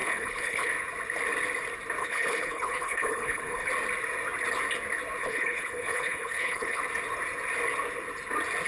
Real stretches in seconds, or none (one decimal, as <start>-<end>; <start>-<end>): 0.7-2.0; 3.7-5.2; 6.8-8.7